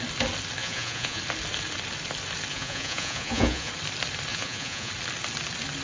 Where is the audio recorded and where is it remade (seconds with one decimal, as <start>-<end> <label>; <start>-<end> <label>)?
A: 0.0-0.6 recorded; 0.6-1.2 remade; 1.2-2.5 recorded; 2.5-3.7 remade; 3.7-4.3 recorded; 4.3-4.9 remade; 4.9-5.8 recorded